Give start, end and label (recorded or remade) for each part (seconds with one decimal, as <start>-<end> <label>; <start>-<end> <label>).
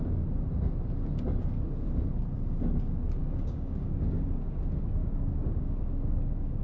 0.0-3.2 recorded; 3.2-4.6 remade; 4.6-5.0 recorded; 5.0-6.6 remade